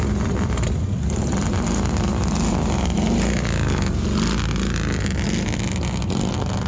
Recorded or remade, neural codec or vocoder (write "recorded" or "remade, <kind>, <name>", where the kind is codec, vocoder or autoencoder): recorded